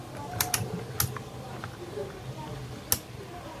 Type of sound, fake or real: real